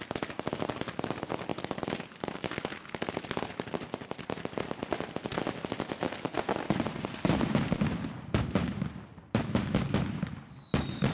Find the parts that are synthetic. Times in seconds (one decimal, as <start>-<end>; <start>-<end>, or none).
none